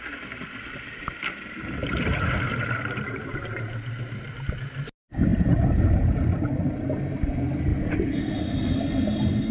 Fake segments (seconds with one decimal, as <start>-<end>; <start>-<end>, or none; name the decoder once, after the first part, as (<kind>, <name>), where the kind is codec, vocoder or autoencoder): none